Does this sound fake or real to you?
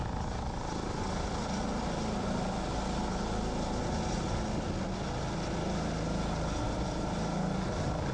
real